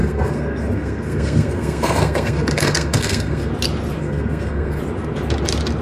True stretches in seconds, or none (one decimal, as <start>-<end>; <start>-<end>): 3.5-4.0; 4.8-5.8